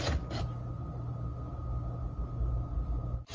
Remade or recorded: recorded